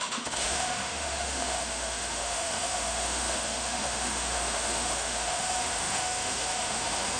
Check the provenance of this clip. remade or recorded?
remade